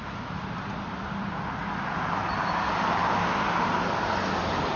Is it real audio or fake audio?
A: real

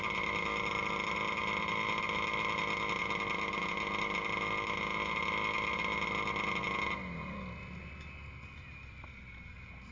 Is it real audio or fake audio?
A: real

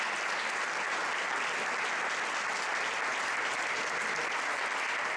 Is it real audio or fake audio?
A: real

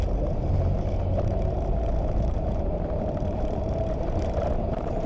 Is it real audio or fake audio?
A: fake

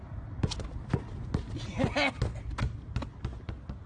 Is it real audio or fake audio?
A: real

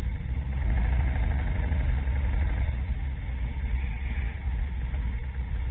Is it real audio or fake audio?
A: fake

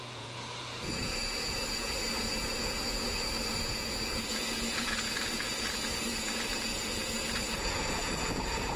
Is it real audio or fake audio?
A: fake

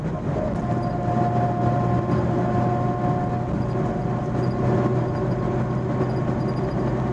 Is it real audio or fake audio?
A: real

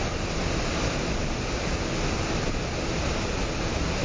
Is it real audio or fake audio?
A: real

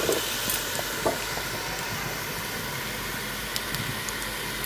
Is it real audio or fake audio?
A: real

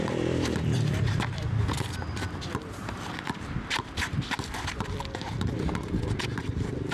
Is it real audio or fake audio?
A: fake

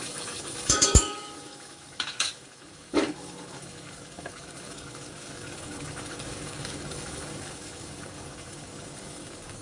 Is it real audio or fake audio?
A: fake